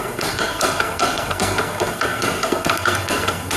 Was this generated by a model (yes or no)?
yes